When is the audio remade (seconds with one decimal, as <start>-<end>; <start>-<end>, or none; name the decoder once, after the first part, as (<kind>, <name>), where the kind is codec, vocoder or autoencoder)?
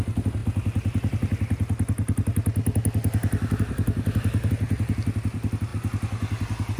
none